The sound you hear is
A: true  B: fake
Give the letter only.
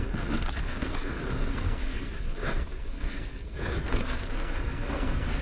B